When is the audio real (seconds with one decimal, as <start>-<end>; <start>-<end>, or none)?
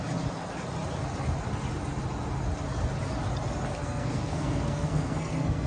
0.0-3.8